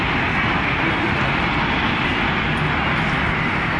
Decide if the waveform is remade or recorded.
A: recorded